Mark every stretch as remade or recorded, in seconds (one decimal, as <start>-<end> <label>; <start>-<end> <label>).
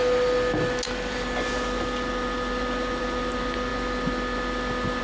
0.0-5.0 recorded